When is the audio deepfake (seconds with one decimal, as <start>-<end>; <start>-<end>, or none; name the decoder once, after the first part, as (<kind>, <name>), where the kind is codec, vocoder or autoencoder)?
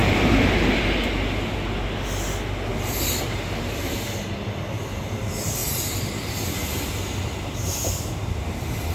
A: 0.0-0.8 (vocoder, BigVGAN v2); 2.7-3.9; 5.6-6.5